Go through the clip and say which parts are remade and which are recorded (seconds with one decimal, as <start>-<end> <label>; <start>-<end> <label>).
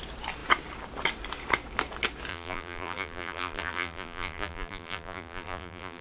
0.0-2.3 recorded; 2.3-6.0 remade